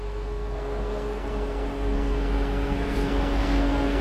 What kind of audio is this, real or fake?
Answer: fake